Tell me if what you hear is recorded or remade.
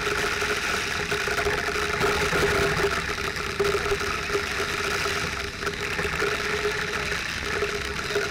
recorded